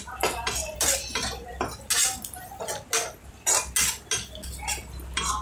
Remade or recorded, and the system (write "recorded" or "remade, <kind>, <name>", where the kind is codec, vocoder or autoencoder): recorded